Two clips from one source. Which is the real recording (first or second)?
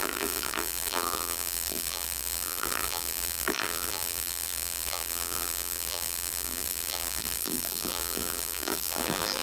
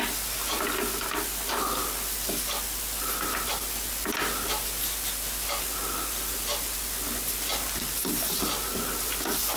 second